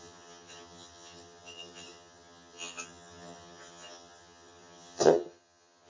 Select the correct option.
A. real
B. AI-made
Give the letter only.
B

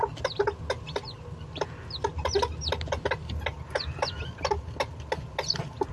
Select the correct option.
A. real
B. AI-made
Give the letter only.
A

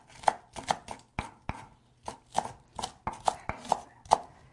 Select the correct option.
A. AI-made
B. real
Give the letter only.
B